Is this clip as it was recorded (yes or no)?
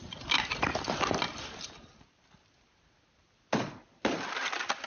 yes